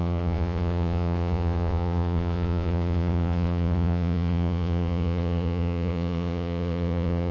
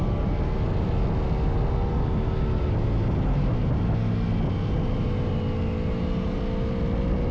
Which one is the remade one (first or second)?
first